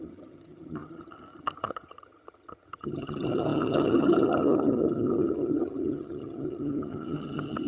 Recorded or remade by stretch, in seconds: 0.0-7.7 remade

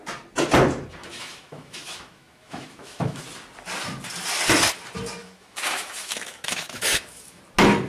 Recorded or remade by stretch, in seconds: 0.0-1.0 recorded; 1.0-3.2 remade; 3.2-5.2 recorded; 5.2-7.4 remade; 7.4-7.9 recorded